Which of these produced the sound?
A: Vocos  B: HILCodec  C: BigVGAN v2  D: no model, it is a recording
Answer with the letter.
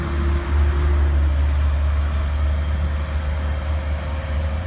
D